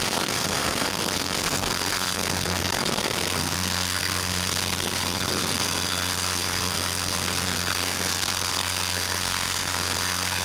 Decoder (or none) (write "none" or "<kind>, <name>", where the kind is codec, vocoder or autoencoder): codec, SNAC